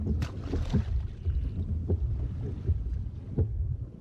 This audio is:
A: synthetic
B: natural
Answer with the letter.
B